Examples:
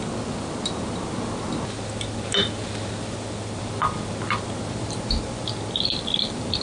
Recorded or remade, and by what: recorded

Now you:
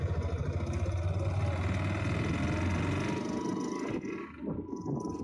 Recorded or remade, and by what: recorded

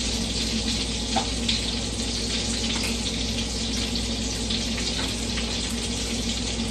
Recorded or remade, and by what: recorded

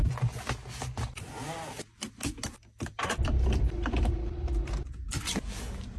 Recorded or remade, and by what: recorded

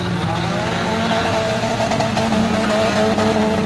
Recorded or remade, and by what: recorded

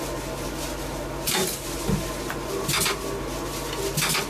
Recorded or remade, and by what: recorded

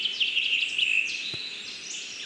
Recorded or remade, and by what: recorded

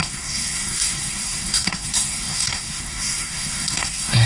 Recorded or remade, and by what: remade, codec, SNAC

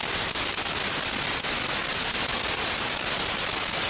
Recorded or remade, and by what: recorded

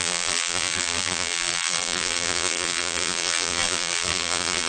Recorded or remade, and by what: remade, vocoder, BigVGAN v2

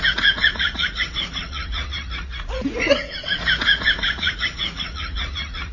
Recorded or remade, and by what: remade, vocoder, Vocos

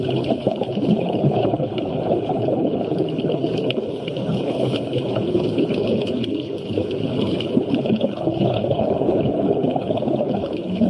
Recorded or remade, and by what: remade, codec, HILCodec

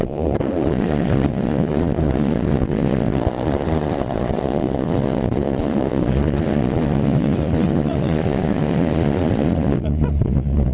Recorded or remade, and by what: remade, vocoder, Vocos